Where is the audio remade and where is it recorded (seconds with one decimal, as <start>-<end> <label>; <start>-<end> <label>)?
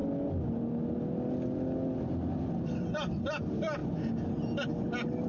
0.0-5.3 recorded